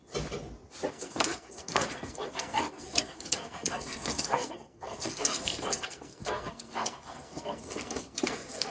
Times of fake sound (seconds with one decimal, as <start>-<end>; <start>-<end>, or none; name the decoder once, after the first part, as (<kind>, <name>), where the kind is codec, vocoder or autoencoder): 0.9-8.7 (codec, SNAC)